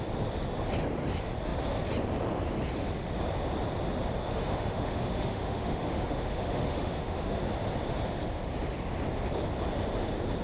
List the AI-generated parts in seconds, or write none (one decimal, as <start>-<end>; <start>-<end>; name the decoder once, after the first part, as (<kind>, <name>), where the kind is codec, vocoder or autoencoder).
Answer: 4.3-7.4 (autoencoder, DAC-VAE)